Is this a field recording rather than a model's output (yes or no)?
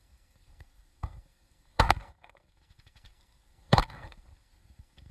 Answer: no